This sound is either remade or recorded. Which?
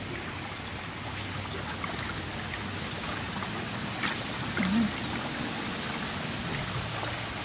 recorded